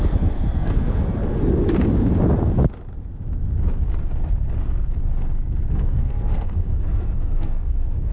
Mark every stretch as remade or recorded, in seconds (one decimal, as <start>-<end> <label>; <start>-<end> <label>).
0.0-1.2 remade; 1.2-5.7 recorded; 5.7-8.1 remade